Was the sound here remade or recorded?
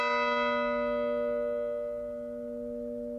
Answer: recorded